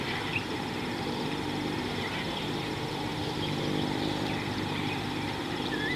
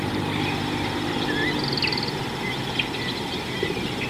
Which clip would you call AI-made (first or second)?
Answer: first